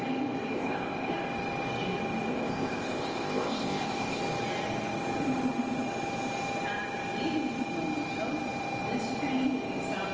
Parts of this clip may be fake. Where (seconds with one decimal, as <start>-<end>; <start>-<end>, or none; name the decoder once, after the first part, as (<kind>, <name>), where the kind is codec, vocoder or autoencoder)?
0.5-1.1 (codec, ZipCodec); 2.3-4.2